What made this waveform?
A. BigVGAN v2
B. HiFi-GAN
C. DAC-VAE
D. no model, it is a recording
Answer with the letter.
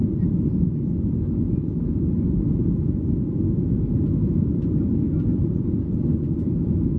D